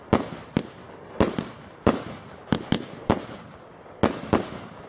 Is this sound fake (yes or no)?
no